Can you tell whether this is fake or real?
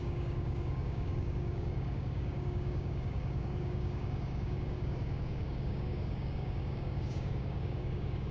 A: fake